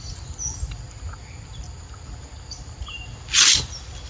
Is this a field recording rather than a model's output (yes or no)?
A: yes